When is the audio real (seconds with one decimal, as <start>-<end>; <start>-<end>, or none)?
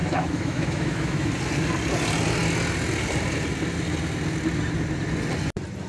1.3-5.9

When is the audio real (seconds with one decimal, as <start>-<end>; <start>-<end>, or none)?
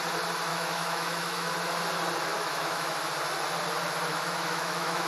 0.0-0.5; 1.5-2.3; 3.1-4.1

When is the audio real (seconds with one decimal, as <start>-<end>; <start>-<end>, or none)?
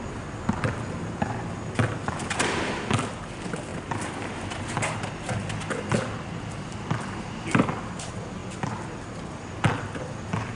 0.0-10.5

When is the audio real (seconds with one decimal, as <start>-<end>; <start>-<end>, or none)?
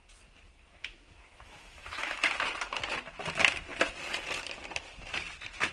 0.0-0.5; 2.3-5.7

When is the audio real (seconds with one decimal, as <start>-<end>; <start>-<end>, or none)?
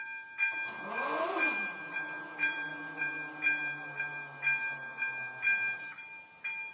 0.0-6.7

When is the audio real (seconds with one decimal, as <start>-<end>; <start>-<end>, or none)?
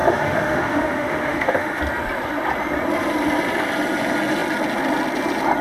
1.8-5.6